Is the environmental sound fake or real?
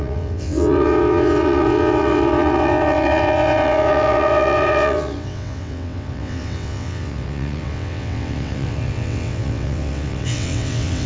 fake